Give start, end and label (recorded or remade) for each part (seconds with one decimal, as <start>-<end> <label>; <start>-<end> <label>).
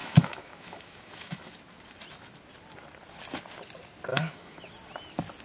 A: 0.0-1.5 remade; 1.5-4.1 recorded; 4.1-4.7 remade; 4.7-5.4 recorded